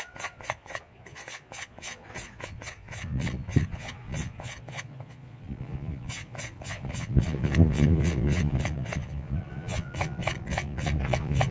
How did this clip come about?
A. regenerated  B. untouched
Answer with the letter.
A